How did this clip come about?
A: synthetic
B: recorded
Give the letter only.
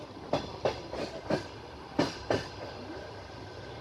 B